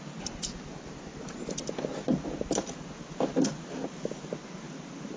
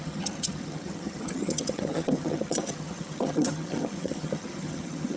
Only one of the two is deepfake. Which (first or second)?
second